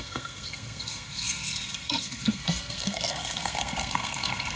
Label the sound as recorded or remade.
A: remade